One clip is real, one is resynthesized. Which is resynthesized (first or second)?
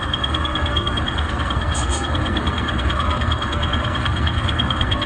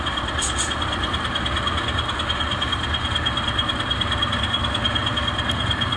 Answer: first